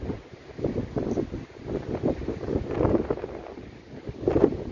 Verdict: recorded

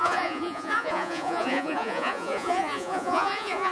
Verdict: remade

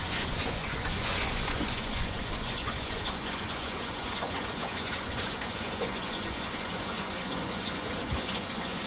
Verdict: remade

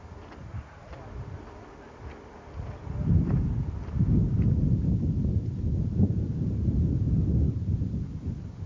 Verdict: recorded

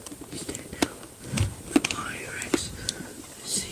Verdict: recorded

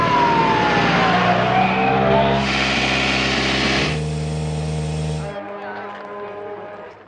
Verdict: recorded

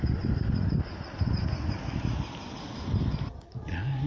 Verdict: recorded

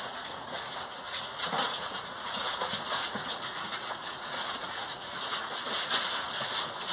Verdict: remade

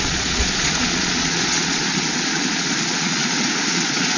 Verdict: remade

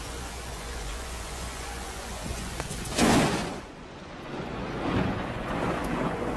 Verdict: remade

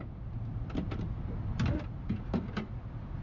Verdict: recorded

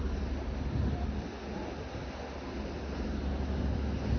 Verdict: recorded